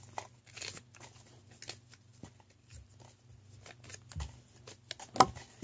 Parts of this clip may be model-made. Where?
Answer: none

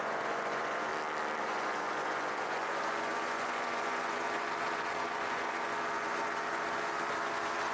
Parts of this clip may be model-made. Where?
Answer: 0.0-0.9 (vocoder, Vocos); 1.4-7.7

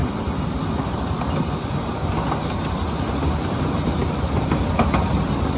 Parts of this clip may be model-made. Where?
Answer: none

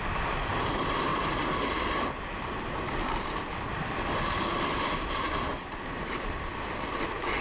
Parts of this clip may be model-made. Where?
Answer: none

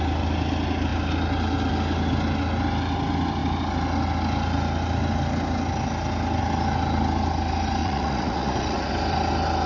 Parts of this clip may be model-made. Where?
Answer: 7.8-8.9 (vocoder, Vocos)

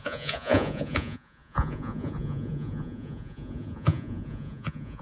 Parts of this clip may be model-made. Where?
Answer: 0.0-5.0 (vocoder, Vocos)

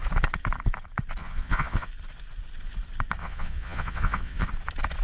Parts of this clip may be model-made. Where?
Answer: 1.2-1.9 (vocoder, Vocos); 3.2-4.5

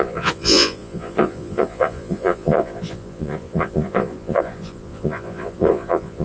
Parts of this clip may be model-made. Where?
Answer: 0.0-6.2 (vocoder, Vocos)